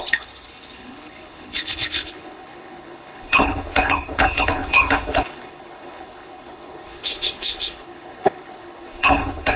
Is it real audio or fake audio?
fake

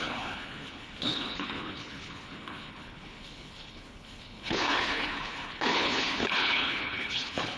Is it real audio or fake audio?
fake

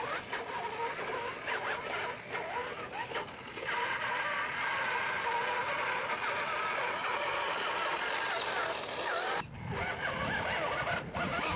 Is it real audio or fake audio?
real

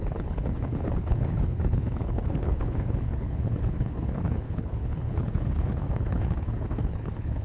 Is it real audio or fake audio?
fake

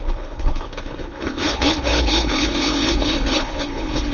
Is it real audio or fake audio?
fake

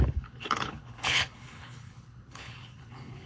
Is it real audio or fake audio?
fake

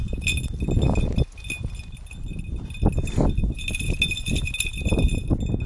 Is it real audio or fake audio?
real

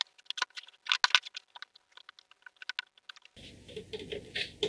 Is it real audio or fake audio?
real